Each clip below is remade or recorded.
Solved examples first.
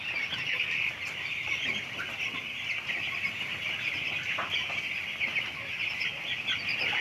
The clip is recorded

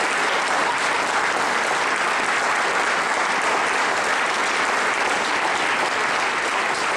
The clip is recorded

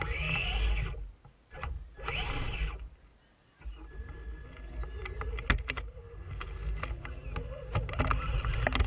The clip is recorded